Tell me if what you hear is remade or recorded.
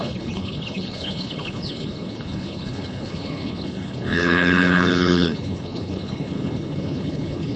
remade